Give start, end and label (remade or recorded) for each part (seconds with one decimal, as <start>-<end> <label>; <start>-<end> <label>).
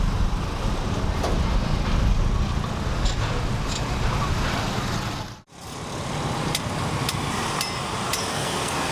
0.0-8.3 recorded; 8.3-8.9 remade